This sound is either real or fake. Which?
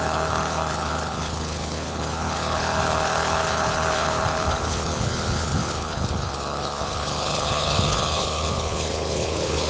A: fake